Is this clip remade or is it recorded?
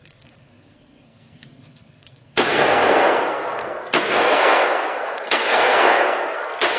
remade